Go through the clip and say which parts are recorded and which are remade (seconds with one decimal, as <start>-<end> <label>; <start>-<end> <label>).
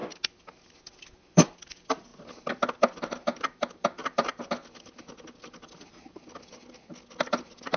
0.0-7.8 recorded